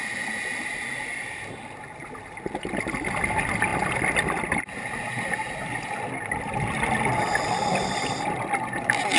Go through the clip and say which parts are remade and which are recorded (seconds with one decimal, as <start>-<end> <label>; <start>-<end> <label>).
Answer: 0.0-9.2 recorded